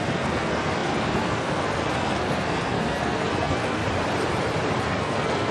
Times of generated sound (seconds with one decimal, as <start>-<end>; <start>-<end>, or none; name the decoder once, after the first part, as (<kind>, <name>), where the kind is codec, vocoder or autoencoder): 0.0-3.8 (codec, SNAC); 4.8-5.5